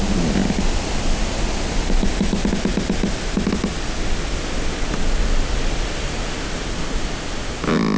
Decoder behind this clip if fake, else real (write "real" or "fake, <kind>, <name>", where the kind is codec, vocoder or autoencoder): real